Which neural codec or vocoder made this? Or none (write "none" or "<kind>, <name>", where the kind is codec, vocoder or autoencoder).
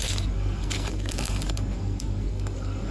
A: codec, SNAC